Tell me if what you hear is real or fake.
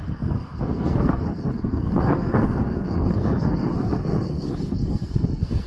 fake